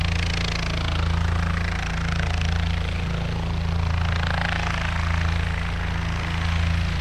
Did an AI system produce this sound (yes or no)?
no